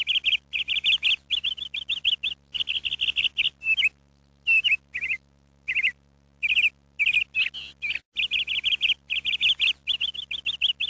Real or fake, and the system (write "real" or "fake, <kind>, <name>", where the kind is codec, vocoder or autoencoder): real